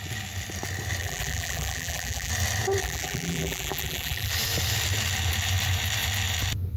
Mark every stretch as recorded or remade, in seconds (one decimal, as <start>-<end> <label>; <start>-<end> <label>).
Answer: 0.0-1.0 recorded; 1.0-2.3 remade; 2.3-2.8 recorded; 2.8-4.3 remade; 4.3-6.8 recorded